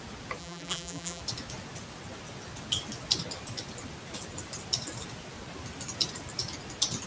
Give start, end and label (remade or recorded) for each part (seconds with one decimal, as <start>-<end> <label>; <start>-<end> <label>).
0.0-0.4 recorded; 0.4-1.2 remade; 1.2-7.1 recorded